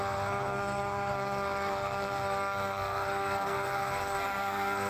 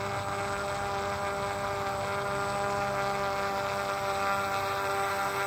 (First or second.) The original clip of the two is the second